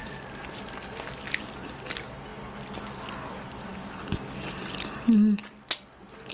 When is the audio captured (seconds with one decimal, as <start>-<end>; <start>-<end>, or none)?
0.0-6.3